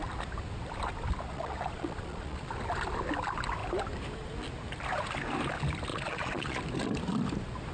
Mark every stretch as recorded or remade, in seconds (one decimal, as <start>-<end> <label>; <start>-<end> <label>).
0.0-1.3 recorded; 1.3-2.4 remade; 2.4-5.9 recorded; 5.9-6.6 remade; 6.6-7.7 recorded